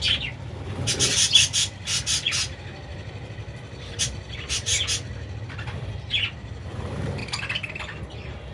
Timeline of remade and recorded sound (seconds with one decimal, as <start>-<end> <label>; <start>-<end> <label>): 0.0-4.7 remade; 4.7-5.4 recorded; 5.4-8.5 remade